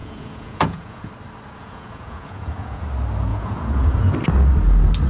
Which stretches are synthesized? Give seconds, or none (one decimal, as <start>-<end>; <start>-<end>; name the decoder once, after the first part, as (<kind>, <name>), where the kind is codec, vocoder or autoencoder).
0.0-1.1 (vocoder, Vocos); 1.6-2.8; 3.3-4.0